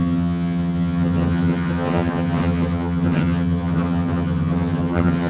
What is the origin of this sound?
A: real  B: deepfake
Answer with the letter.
B